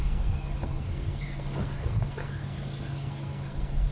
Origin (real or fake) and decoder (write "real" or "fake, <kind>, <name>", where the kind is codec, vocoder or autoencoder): fake, codec, SNAC